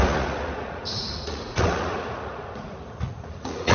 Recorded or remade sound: remade